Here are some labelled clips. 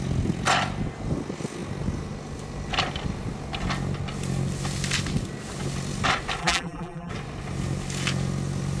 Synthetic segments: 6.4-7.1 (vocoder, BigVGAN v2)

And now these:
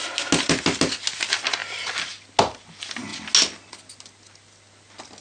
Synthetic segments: none

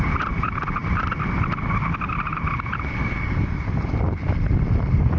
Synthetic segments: none

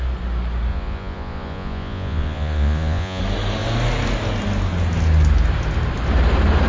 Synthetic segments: 0.7-3.2 (vocoder, Vocos)

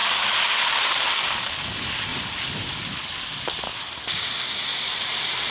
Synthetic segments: 2.1-2.7 (vocoder, BigVGAN v2); 4.7-5.5